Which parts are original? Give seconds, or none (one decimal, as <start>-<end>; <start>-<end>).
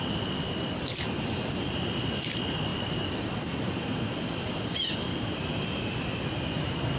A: none